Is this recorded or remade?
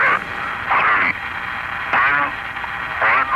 recorded